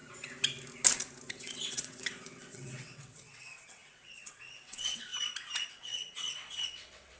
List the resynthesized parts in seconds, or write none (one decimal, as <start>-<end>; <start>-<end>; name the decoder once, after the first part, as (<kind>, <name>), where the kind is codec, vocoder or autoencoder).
1.3-5.1 (vocoder, WaveNeXt); 5.7-7.2